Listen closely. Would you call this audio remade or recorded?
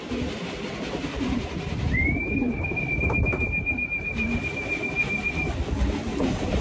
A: remade